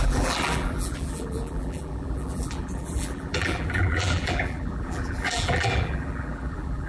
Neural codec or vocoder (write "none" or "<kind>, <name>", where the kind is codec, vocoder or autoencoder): vocoder, BigVGAN v2